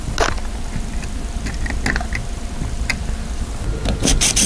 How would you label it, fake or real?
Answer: real